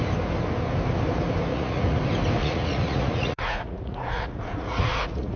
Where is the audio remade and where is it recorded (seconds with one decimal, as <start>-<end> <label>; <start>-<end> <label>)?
0.0-1.5 recorded; 1.5-2.0 remade; 2.0-2.4 recorded; 2.4-5.4 remade